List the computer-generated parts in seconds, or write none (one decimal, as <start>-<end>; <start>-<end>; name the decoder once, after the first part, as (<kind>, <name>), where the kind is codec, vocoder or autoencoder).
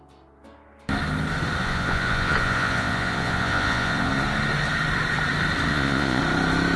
1.6-4.1 (vocoder, Vocos); 5.7-6.2